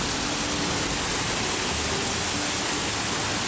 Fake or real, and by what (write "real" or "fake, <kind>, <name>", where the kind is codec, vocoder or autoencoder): real